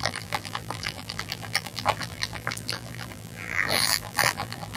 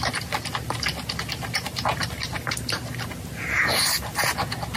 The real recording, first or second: second